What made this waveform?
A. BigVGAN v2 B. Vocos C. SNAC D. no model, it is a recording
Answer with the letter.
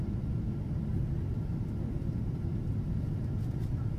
D